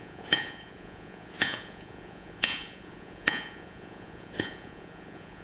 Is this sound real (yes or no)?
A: no